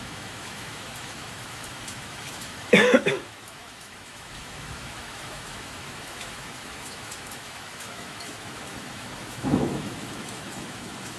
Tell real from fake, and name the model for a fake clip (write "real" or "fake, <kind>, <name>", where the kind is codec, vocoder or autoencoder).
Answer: fake, autoencoder, DAC-VAE